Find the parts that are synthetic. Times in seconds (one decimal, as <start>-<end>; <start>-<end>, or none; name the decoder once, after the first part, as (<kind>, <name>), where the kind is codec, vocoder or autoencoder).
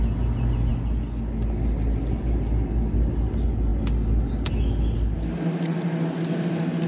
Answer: none